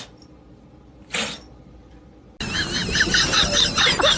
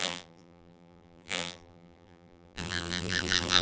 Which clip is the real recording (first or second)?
first